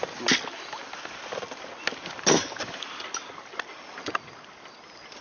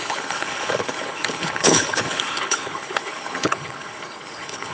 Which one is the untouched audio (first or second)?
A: first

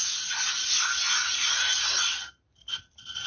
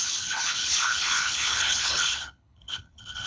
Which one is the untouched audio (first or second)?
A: first